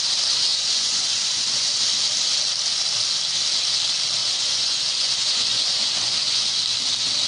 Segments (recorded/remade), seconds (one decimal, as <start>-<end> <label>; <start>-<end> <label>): 0.0-0.5 recorded; 0.5-1.8 remade; 1.8-4.2 recorded; 4.2-6.6 remade; 6.6-7.3 recorded